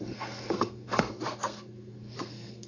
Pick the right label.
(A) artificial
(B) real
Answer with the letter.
A